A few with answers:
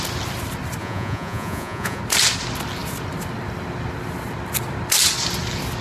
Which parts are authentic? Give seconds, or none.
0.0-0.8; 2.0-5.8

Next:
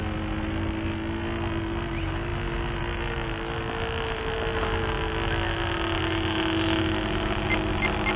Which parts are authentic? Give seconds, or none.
0.0-8.2

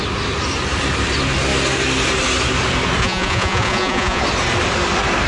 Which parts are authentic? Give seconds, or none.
0.0-3.0; 4.2-5.3

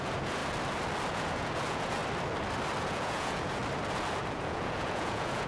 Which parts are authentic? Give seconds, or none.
0.4-1.1; 2.0-2.8; 3.6-4.2

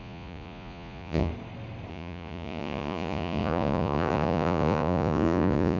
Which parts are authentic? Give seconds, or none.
1.3-1.9

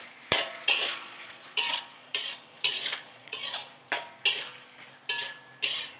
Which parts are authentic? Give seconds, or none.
3.6-6.0

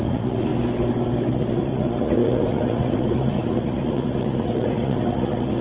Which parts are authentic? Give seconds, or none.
0.5-1.3

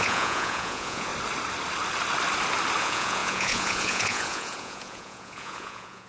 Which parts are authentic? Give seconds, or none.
1.1-2.8